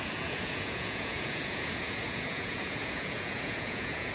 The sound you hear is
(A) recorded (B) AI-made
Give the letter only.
B